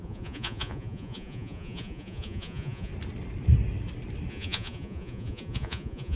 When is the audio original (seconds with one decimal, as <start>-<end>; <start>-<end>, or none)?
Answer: 2.9-4.3